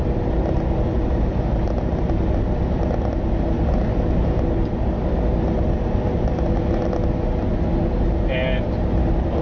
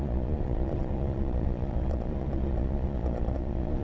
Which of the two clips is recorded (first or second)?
first